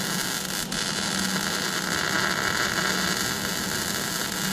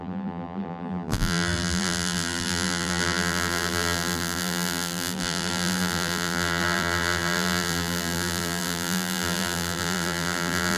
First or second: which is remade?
second